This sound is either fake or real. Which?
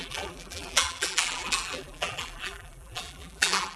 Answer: fake